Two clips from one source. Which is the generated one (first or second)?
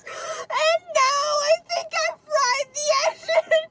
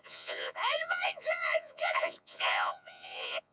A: second